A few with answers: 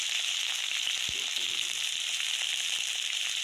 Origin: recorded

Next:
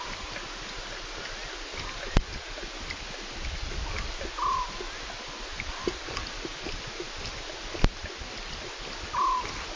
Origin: recorded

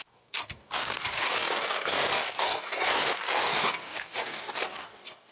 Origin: remade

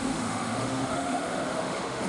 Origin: remade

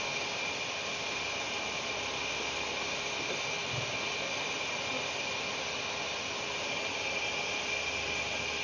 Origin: recorded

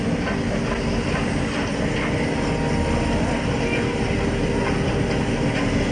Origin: recorded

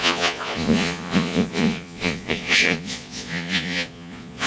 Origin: remade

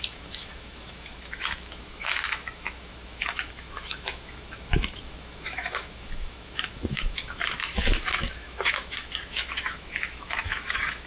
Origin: remade